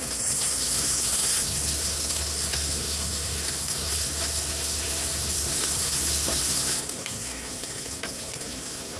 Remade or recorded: remade